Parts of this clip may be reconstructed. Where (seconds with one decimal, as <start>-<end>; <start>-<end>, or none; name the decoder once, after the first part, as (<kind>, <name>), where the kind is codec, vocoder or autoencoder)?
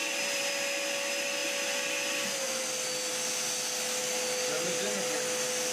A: 0.0-0.5 (vocoder, BigVGAN v2)